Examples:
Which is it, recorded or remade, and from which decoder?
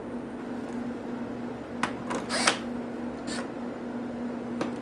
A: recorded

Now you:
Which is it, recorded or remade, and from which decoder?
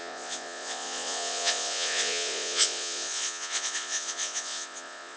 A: remade, vocoder, Vocos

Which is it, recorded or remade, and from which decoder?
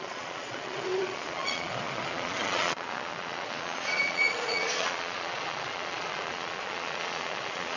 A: remade, vocoder, Vocos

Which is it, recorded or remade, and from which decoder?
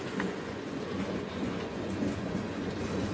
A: remade, vocoder, Vocos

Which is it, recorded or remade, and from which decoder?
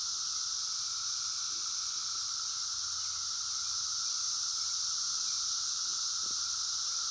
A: recorded